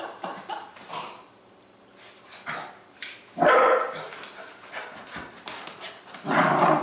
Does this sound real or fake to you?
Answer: fake